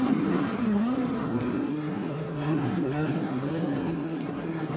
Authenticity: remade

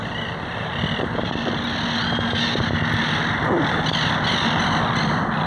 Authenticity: remade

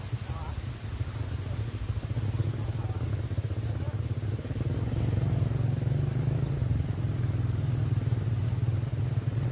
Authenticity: recorded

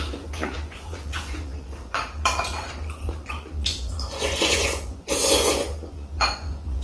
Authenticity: remade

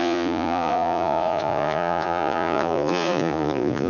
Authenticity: remade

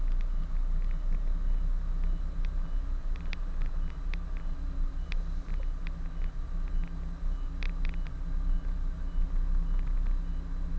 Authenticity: recorded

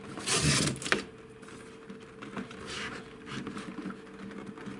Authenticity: recorded